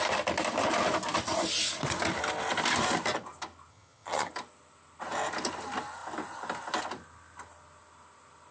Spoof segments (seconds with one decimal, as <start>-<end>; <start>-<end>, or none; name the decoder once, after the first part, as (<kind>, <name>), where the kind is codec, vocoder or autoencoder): 3.7-4.3 (vocoder, HiFi-GAN)